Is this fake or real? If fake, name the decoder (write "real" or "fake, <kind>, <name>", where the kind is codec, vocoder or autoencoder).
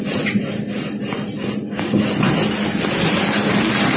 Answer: real